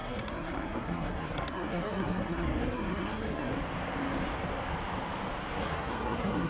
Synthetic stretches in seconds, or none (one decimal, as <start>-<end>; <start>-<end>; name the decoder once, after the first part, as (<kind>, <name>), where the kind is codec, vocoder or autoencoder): 0.0-3.5 (codec, SNAC); 5.6-6.5